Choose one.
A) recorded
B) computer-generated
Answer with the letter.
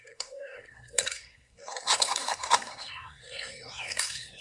B